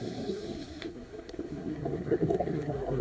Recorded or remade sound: remade